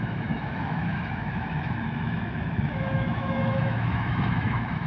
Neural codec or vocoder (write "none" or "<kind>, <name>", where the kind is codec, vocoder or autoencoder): autoencoder, DAC-VAE